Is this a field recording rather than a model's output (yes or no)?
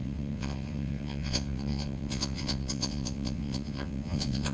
no